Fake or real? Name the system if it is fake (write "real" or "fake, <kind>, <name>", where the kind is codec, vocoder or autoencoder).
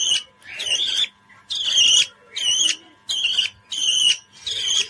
real